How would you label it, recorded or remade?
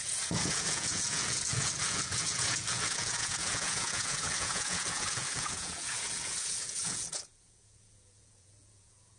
remade